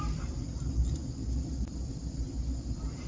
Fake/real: real